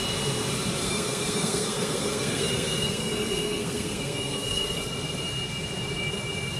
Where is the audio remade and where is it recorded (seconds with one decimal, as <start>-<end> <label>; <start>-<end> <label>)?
0.0-0.8 recorded; 0.8-4.8 remade; 4.8-6.6 recorded